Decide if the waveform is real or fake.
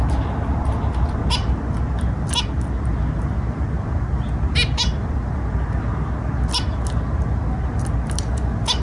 real